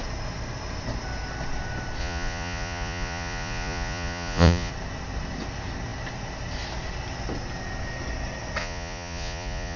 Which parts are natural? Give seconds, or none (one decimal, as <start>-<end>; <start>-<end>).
0.0-2.0; 4.7-8.6